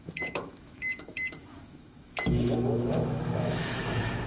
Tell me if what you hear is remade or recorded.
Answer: remade